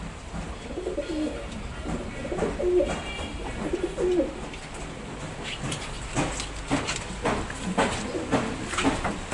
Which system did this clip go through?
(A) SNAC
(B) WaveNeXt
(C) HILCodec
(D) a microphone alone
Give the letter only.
D